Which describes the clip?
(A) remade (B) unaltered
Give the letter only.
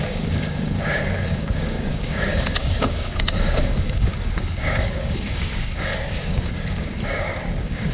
A